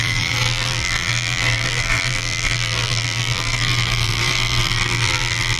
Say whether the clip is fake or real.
fake